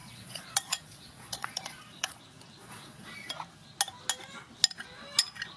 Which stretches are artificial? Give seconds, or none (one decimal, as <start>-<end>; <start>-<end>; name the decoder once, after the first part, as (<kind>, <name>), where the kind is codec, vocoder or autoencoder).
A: 0.0-2.2 (vocoder, Vocos); 2.6-3.3